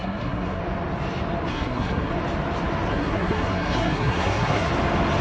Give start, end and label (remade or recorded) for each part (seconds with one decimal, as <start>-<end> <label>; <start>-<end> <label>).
0.0-0.6 remade; 0.6-1.5 recorded; 1.5-2.1 remade; 2.1-2.9 recorded; 2.9-4.7 remade; 4.7-5.2 recorded